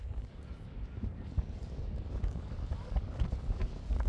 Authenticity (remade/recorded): remade